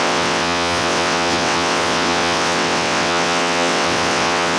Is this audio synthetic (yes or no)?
yes